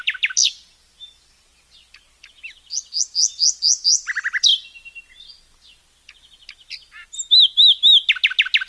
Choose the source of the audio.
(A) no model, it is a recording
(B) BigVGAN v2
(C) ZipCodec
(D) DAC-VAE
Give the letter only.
A